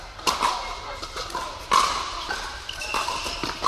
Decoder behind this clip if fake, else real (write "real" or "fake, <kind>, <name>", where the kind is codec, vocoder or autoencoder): real